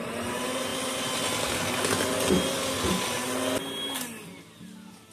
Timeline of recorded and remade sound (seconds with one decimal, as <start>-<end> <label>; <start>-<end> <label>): 0.0-5.1 recorded